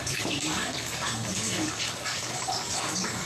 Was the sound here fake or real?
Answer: fake